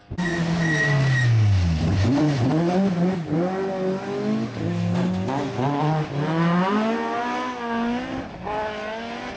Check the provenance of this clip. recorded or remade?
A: recorded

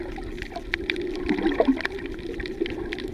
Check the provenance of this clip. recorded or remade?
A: recorded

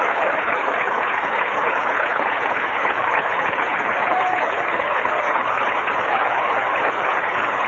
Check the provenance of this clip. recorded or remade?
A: remade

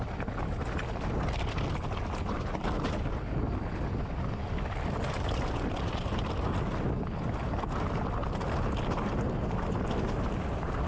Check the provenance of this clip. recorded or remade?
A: recorded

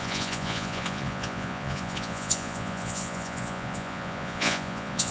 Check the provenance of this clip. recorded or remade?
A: remade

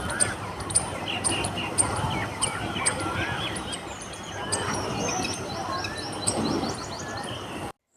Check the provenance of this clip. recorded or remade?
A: recorded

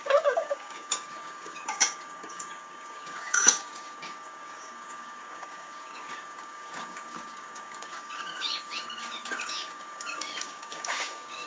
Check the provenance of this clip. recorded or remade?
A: remade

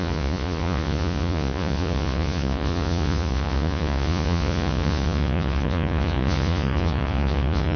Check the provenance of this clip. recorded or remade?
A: remade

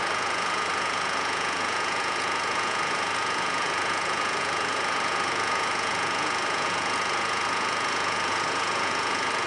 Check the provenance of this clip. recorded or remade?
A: remade